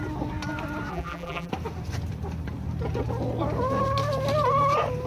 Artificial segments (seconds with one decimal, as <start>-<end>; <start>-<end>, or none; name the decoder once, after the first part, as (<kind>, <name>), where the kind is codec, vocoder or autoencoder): 0.9-1.5 (vocoder, BigVGAN v2)